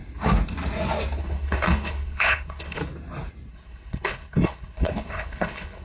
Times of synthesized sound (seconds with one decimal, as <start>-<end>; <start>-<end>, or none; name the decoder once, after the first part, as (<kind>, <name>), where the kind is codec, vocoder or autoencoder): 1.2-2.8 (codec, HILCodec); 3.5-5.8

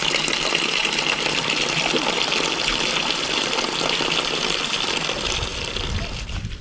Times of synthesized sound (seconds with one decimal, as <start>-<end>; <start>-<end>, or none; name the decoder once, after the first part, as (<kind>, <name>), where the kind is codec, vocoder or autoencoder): none

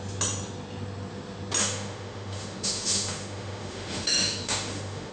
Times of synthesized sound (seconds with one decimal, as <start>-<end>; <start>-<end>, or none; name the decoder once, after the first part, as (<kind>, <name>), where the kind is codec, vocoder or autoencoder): 1.6-5.1 (autoencoder, DAC-VAE)

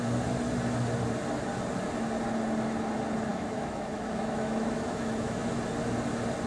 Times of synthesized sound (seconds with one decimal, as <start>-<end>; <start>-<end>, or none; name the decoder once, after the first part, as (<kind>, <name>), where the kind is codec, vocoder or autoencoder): 3.3-5.5 (autoencoder, DAC-VAE)

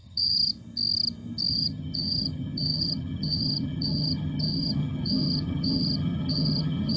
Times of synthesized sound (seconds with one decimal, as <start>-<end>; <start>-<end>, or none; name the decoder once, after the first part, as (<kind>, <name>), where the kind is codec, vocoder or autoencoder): 0.0-0.5 (vocoder, HiFi-GAN); 1.5-7.0

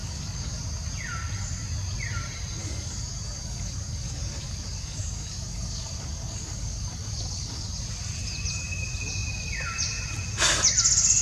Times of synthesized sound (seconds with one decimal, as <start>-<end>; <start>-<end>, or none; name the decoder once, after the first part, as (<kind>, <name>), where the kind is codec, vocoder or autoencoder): 0.0-0.6 (codec, DAC); 2.6-7.7

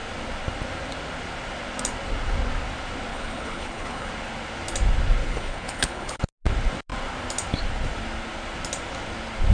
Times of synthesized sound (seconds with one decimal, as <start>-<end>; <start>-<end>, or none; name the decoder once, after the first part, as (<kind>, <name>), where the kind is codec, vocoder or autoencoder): 3.1-4.1 (codec, HILCodec); 5.2-6.2